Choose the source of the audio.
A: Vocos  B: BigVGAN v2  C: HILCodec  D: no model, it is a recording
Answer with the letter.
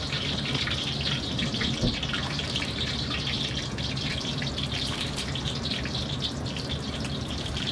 B